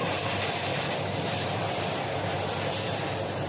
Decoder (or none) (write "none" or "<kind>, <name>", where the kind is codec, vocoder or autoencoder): none